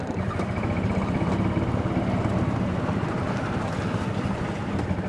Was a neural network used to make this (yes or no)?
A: no